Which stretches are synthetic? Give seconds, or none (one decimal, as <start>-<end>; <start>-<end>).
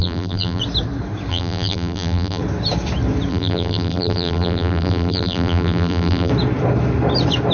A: 0.0-0.6; 1.3-2.4; 3.3-6.3